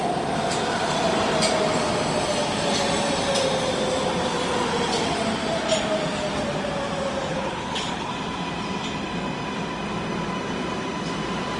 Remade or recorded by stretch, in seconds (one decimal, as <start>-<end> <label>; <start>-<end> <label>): 0.0-7.3 recorded; 7.3-8.1 remade; 8.1-11.6 recorded